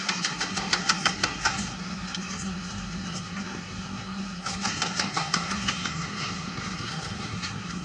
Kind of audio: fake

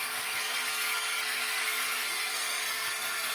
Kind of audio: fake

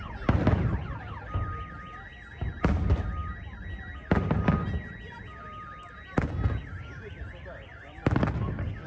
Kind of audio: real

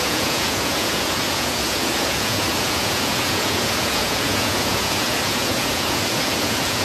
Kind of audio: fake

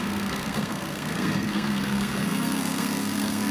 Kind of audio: fake